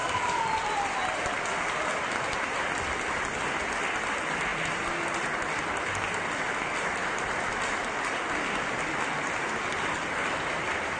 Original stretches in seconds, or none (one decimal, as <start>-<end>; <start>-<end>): 0.0-11.0